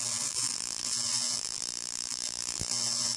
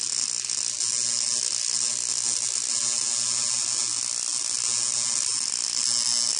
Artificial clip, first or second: first